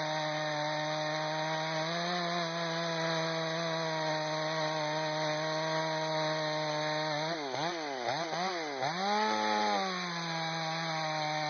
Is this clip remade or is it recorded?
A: recorded